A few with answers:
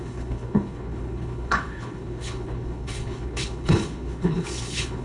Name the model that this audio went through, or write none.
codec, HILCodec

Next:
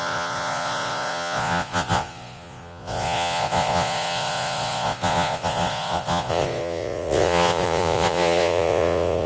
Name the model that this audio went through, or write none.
vocoder, Vocos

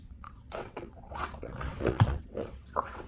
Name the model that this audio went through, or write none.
vocoder, WaveNeXt